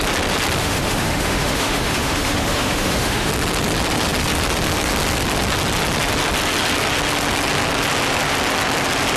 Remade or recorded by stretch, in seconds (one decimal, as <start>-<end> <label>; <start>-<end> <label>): 0.0-0.6 recorded; 0.6-3.3 remade; 3.3-9.2 recorded